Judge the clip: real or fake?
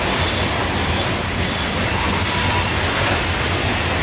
real